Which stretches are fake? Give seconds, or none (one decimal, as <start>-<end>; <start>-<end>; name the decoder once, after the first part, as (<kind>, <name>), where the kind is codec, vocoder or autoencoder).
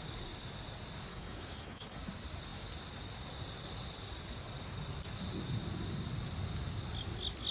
1.1-2.0 (codec, DAC)